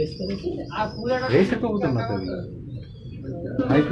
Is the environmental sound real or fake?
real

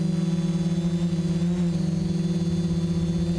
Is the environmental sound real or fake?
real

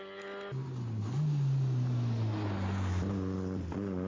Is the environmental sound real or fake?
real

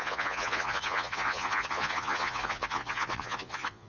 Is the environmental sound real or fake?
fake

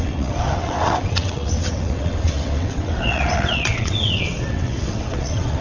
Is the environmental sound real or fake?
fake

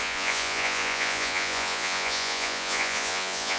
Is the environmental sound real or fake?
fake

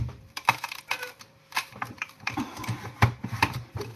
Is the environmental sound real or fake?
fake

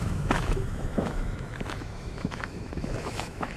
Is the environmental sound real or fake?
fake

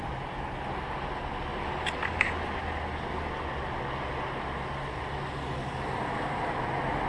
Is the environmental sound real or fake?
real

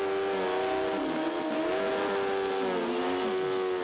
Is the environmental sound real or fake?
real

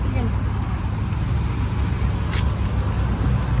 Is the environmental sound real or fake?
real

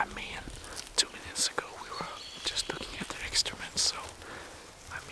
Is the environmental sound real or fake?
real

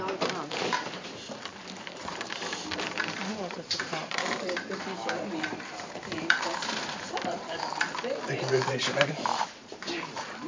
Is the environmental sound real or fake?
fake